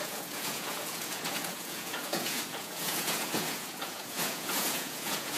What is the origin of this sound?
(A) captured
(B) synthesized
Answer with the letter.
B